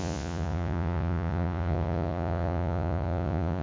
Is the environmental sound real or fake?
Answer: fake